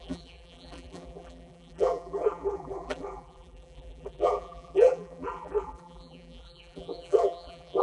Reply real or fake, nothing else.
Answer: fake